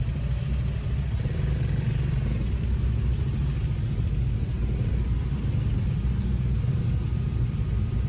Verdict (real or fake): real